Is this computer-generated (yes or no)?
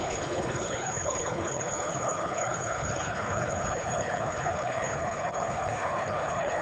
yes